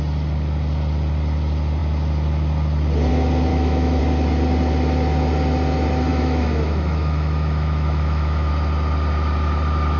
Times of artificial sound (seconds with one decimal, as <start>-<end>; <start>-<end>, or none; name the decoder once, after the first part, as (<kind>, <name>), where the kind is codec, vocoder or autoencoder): 3.5-4.0 (autoencoder, DAC-VAE); 6.1-8.5